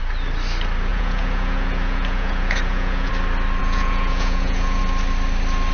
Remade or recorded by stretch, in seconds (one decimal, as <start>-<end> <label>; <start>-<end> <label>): 0.0-0.9 recorded; 0.9-3.1 remade; 3.1-3.6 recorded; 3.6-4.8 remade; 4.8-5.7 recorded